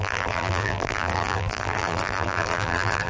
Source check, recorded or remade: remade